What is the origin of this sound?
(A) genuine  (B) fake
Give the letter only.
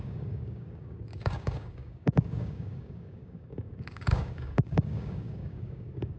B